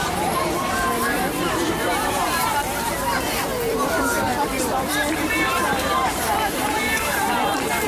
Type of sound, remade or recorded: remade